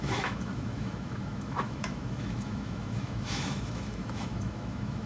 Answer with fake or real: fake